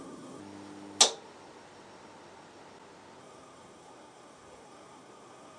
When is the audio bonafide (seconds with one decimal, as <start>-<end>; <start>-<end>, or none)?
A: 0.4-3.2